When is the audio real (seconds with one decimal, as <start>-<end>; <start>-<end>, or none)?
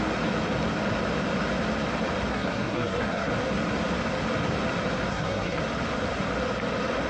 0.0-2.3; 3.3-5.1; 5.6-7.1